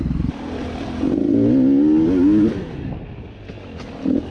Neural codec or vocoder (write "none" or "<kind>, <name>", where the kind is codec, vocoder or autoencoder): none